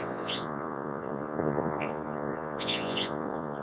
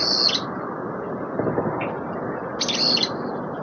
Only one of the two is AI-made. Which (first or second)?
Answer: first